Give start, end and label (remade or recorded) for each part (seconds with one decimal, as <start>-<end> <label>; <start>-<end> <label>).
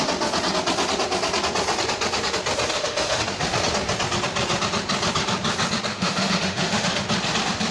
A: 0.0-2.7 recorded; 2.7-3.2 remade; 3.2-5.9 recorded; 5.9-7.0 remade; 7.0-7.7 recorded